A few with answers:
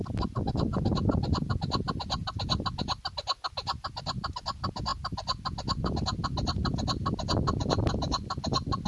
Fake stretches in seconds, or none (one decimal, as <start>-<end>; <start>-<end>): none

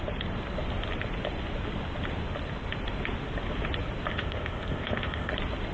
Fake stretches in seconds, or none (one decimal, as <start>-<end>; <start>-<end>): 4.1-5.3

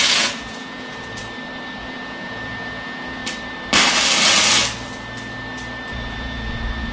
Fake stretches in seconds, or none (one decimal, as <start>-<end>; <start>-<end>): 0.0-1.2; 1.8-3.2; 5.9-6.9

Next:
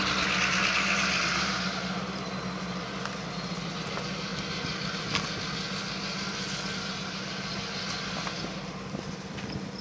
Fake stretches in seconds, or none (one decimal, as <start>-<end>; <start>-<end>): none

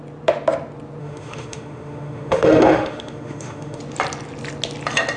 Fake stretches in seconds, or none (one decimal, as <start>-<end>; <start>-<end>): 1.0-3.8

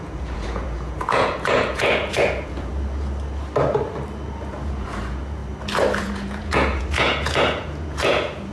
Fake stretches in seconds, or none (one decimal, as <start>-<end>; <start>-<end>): 0.0-2.7; 4.5-5.4; 6.0-8.5

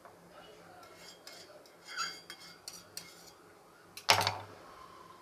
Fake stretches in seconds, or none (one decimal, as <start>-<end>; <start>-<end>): none